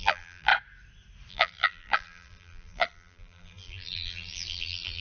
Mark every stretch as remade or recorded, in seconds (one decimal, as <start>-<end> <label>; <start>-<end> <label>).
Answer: 0.0-0.5 remade; 0.5-1.3 recorded; 1.3-5.0 remade